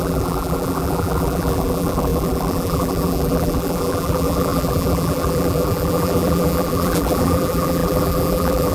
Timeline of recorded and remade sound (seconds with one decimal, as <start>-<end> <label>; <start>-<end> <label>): 0.0-8.7 remade